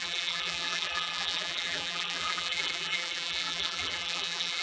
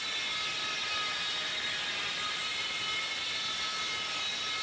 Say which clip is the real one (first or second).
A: second